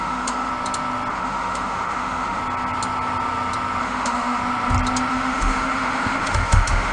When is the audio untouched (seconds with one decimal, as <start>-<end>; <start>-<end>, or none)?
0.5-1.1; 2.4-3.8; 4.4-5.1